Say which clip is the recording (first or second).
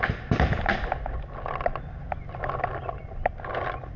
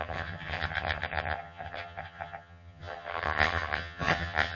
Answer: first